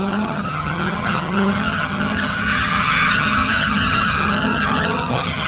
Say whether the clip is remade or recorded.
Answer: remade